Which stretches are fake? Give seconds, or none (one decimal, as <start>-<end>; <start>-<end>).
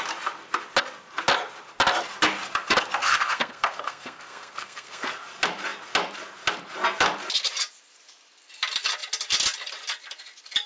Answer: 3.0-5.2